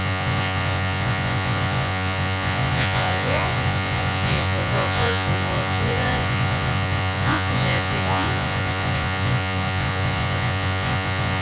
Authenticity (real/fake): fake